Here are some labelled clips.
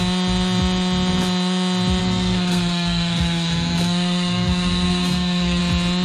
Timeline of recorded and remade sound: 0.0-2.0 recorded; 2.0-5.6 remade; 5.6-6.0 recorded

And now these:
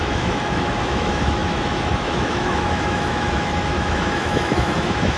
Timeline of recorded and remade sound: 0.0-5.2 remade